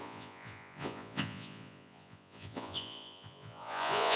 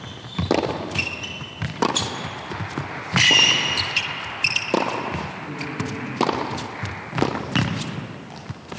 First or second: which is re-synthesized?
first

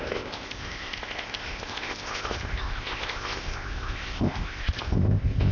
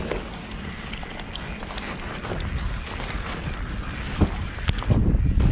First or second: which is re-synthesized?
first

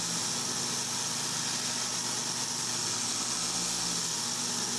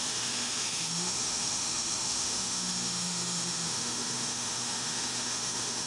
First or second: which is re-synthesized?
second